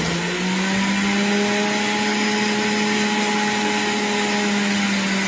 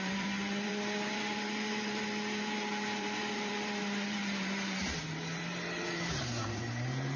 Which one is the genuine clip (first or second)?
first